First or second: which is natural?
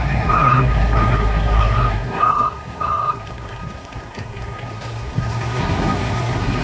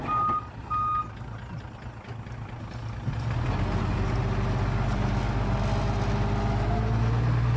second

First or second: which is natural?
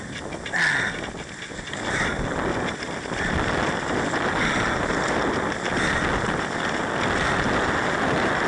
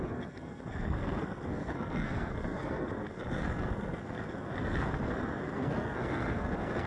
first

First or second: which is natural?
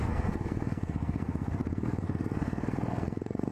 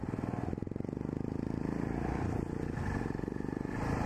second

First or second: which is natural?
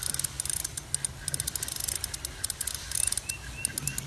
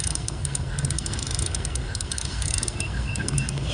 first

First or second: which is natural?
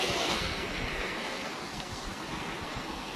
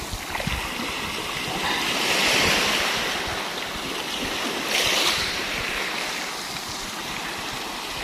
second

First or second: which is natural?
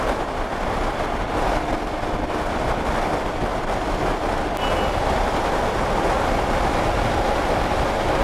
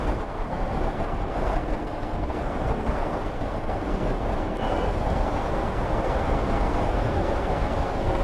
first